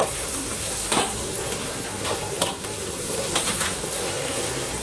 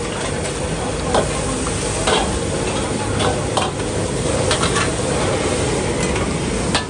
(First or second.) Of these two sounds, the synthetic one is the first